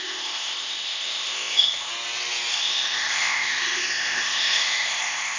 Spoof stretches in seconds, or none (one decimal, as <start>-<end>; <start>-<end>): 0.0-1.9; 2.5-5.4